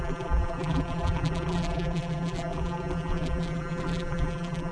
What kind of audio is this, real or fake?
fake